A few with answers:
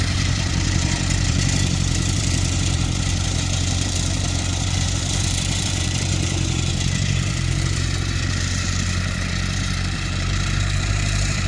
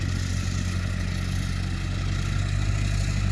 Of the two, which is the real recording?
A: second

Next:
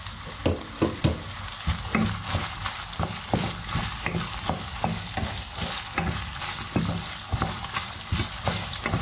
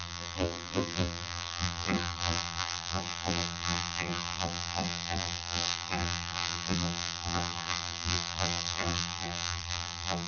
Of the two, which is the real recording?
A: first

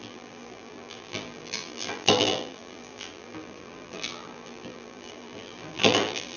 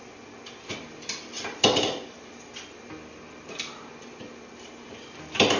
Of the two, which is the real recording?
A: second